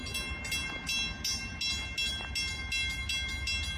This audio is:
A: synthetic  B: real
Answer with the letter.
B